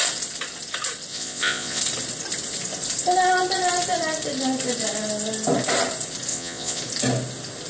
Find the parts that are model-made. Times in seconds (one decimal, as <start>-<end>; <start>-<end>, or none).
1.1-1.8; 6.3-6.8

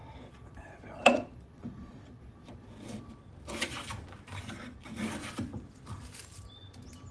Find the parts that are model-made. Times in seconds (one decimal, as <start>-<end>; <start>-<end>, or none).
0.0-3.1

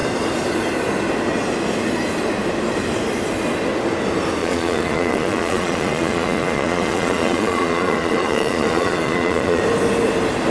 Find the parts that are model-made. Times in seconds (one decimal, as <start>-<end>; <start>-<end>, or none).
4.4-9.6

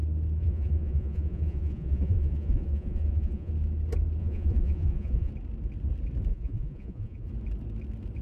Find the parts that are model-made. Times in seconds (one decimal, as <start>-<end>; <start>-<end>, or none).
0.4-3.5; 4.2-5.3; 6.3-7.3

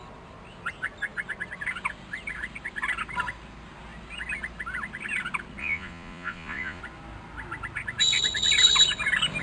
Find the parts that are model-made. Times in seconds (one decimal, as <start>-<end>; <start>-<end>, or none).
5.6-6.8

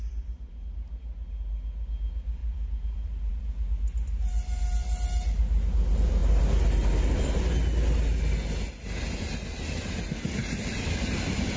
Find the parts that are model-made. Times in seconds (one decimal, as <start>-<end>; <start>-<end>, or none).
none